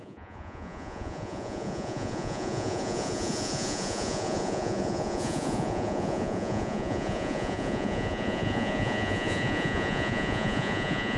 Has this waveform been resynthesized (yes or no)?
yes